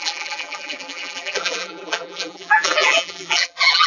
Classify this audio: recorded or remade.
remade